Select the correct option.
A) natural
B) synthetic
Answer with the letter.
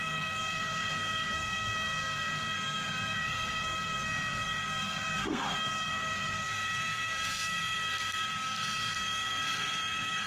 B